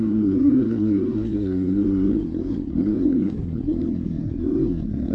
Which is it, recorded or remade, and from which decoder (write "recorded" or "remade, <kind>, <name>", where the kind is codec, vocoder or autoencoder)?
remade, codec, SNAC